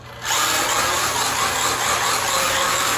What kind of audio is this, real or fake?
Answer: real